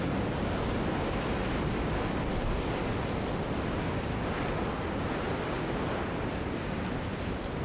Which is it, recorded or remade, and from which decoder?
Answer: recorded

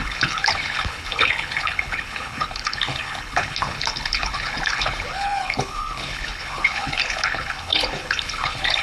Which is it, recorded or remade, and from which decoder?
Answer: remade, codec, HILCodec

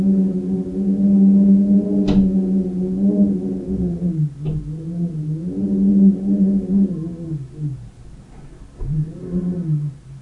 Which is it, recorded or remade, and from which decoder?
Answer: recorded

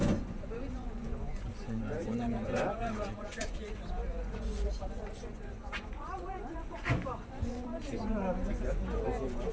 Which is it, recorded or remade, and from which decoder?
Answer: remade, vocoder, Vocos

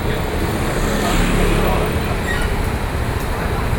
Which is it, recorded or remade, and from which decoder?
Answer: recorded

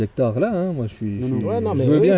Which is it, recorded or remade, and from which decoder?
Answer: recorded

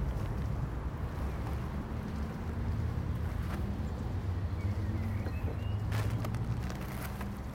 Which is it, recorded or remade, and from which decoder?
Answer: recorded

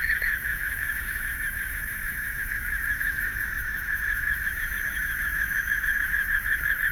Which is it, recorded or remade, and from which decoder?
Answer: remade, autoencoder, DAC-VAE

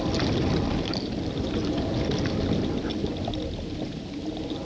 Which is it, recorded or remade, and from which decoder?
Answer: recorded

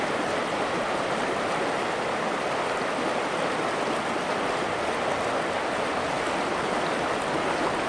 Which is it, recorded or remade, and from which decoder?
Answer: recorded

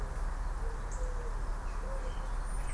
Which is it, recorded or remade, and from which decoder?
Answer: recorded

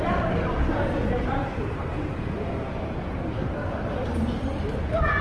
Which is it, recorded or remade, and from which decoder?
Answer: remade, vocoder, BigVGAN v2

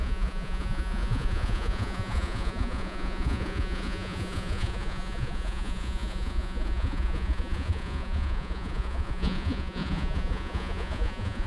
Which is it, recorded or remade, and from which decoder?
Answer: remade, vocoder, Vocos